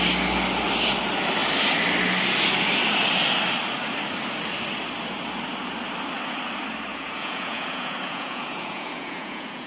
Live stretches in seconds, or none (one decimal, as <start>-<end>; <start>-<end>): 0.0-6.9